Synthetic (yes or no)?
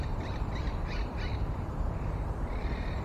no